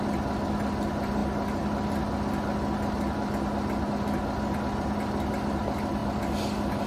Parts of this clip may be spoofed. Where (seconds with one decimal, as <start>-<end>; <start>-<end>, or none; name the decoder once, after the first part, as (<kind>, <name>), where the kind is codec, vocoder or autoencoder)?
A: none

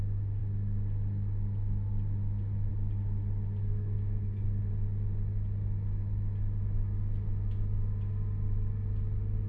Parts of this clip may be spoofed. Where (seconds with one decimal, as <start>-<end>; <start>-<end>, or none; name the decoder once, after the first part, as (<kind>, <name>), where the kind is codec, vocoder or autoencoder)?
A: 3.6-4.6 (codec, SNAC)

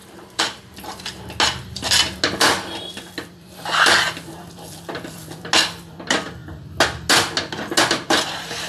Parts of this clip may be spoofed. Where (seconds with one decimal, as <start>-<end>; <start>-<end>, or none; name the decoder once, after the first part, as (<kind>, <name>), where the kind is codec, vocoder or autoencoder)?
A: 0.0-1.0 (vocoder, BigVGAN v2)